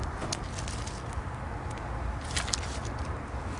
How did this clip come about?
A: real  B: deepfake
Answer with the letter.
A